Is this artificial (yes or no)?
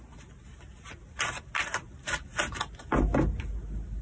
no